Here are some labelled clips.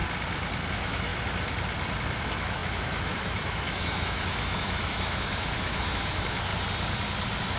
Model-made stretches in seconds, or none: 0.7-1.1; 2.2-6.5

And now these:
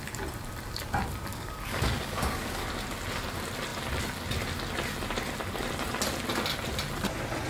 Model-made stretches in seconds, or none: 1.3-2.7

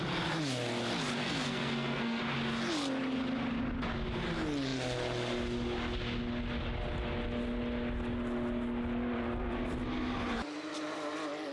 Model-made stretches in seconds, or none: 1.2-2.2